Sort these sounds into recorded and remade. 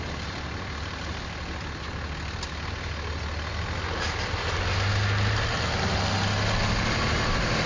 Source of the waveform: recorded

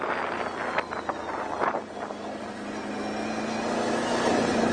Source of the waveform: recorded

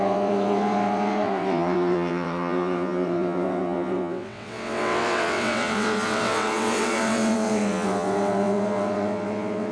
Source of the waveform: remade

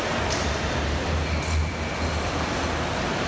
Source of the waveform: recorded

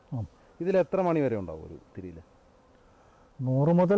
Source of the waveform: recorded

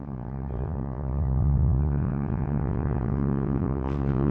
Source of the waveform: remade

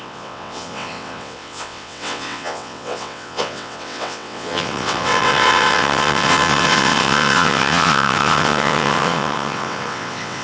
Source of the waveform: remade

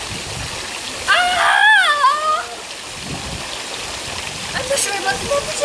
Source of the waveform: recorded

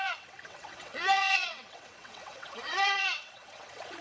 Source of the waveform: remade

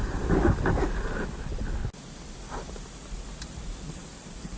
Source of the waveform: recorded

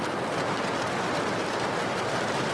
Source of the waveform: recorded